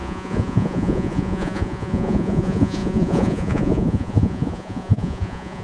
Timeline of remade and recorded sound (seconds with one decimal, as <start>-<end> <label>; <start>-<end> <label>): 0.0-5.6 remade